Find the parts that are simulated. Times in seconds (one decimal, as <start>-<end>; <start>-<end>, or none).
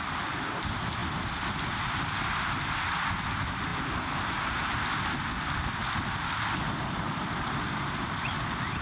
0.0-1.0; 3.2-3.7; 5.3-8.8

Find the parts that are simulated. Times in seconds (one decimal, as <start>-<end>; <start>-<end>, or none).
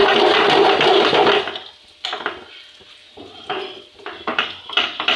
none